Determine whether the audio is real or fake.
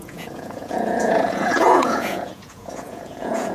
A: fake